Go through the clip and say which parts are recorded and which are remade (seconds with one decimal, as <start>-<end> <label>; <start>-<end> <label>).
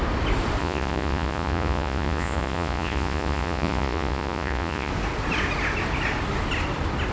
0.0-0.6 recorded; 0.6-4.9 remade; 4.9-7.1 recorded